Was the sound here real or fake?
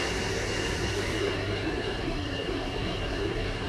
fake